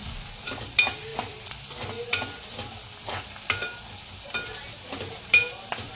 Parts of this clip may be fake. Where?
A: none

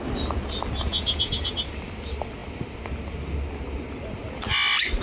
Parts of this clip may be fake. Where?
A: 0.9-1.5 (vocoder, Vocos)

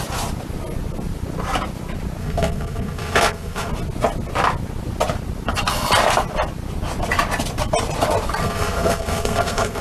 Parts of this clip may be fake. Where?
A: 2.2-3.7 (codec, SNAC); 8.4-9.8

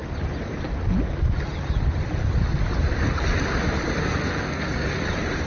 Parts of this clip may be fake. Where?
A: 4.0-5.0 (codec, SNAC)

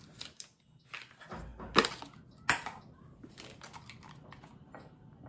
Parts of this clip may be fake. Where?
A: none